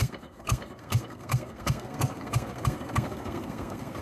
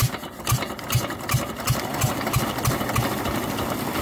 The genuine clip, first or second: second